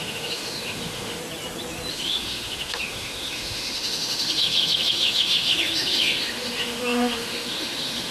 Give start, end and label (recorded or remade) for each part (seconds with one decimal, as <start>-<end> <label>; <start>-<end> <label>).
0.0-1.2 remade; 1.2-1.9 recorded; 1.9-8.1 remade